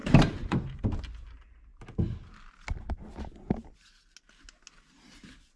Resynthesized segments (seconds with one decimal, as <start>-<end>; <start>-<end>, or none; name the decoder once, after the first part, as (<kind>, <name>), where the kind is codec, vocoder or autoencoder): 0.0-1.0 (vocoder, BigVGAN v2)